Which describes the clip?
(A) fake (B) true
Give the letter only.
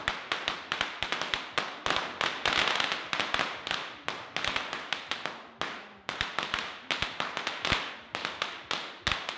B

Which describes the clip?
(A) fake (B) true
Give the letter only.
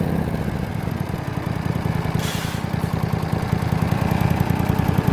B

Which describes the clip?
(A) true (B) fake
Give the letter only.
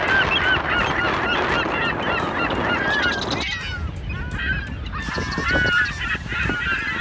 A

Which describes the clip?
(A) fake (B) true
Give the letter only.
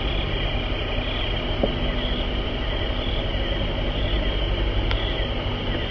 B